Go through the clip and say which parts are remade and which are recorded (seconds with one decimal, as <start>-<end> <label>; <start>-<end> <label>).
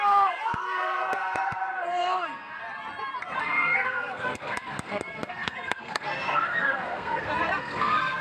0.0-2.6 remade; 2.6-3.4 recorded; 3.4-8.2 remade